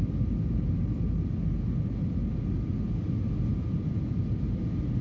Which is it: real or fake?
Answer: real